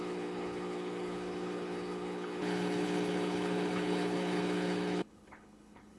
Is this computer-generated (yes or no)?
yes